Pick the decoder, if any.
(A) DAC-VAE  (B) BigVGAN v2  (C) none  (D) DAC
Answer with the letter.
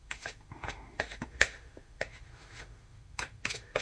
A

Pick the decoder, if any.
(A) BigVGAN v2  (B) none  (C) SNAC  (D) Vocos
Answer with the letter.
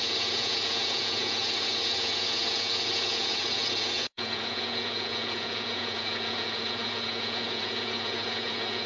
D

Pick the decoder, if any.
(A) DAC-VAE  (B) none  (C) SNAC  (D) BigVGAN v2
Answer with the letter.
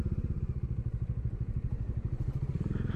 D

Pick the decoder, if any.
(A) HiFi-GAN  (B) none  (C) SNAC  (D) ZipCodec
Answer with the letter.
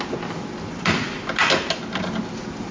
B